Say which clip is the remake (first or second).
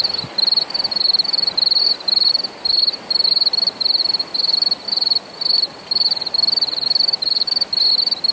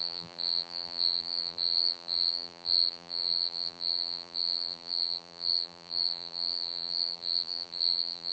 second